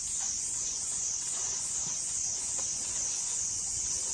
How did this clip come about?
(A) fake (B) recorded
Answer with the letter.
A